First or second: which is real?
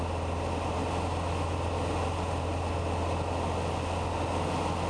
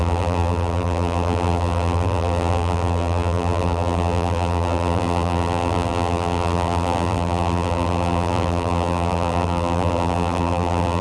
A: first